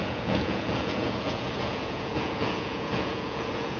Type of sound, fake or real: fake